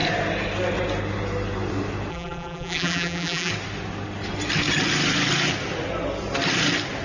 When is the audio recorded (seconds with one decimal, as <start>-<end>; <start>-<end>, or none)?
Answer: 0.0-2.1; 3.5-7.0